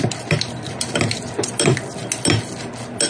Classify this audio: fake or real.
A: real